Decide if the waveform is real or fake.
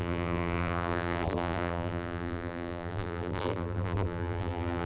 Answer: fake